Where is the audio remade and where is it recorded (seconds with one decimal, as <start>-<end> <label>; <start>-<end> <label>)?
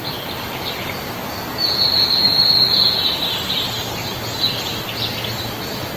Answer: 0.0-6.0 recorded